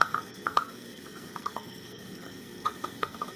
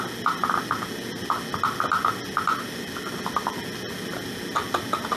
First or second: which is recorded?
second